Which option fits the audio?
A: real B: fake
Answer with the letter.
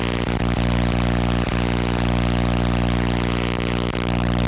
A